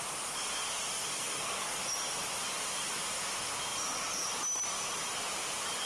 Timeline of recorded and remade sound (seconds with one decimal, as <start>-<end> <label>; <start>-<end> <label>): 0.0-1.0 recorded; 1.0-1.8 remade; 1.8-5.9 recorded